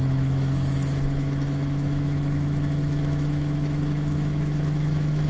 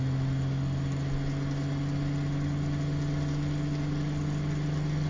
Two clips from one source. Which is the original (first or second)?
second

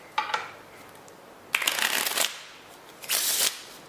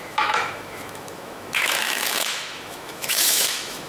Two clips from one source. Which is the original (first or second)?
first